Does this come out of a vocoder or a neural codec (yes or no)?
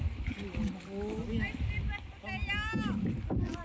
no